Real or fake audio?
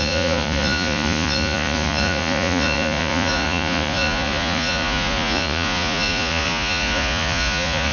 fake